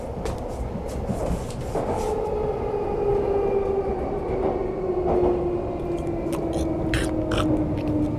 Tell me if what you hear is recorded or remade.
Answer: recorded